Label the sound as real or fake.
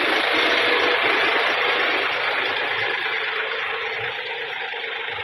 real